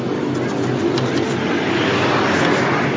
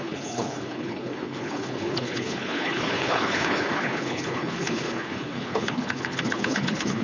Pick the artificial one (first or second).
second